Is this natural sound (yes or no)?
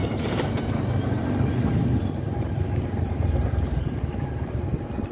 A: no